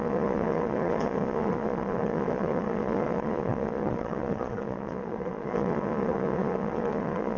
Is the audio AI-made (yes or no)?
yes